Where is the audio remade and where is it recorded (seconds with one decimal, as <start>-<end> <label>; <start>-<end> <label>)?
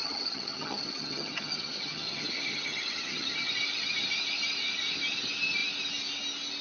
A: 0.0-3.5 remade; 3.5-6.6 recorded